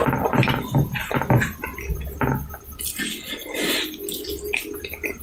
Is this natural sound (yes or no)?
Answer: yes